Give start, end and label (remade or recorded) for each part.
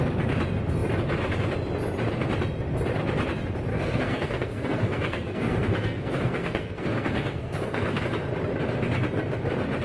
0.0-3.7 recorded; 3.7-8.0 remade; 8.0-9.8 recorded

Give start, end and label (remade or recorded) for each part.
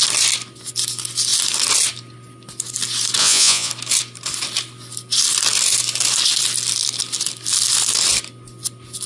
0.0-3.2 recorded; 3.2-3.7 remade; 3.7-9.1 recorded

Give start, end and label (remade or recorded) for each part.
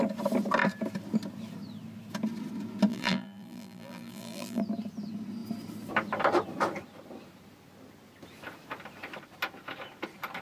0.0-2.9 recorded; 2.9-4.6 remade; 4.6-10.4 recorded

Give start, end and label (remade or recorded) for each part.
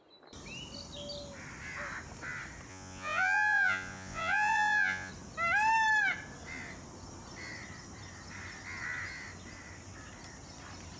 0.0-2.7 recorded; 2.7-5.1 remade; 5.1-11.0 recorded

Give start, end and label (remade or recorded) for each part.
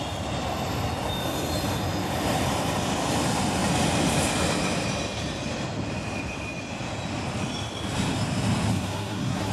0.0-8.7 recorded; 8.7-9.5 remade